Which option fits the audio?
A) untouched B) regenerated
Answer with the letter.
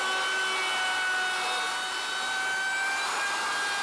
A